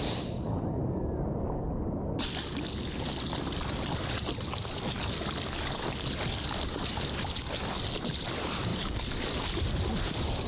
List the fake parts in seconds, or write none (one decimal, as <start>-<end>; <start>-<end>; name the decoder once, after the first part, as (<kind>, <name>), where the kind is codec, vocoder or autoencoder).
8.7-10.5 (vocoder, BigVGAN v2)